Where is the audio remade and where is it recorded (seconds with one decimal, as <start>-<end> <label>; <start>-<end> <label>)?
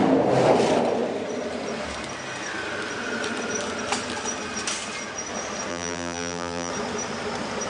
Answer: 0.0-5.7 recorded; 5.7-6.7 remade; 6.7-7.7 recorded